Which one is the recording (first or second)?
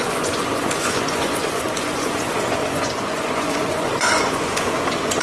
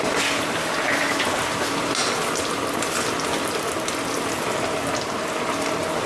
second